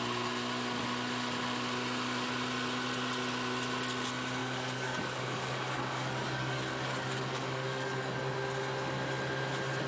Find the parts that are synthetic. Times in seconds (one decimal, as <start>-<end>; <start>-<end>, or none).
4.4-8.2